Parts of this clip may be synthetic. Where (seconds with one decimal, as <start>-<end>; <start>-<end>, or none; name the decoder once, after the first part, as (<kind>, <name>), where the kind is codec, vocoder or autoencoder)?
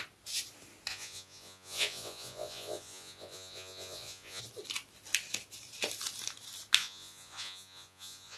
0.9-4.4 (vocoder, Vocos); 6.8-8.4